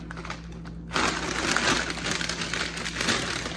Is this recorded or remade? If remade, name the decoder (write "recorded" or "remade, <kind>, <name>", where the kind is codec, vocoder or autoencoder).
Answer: recorded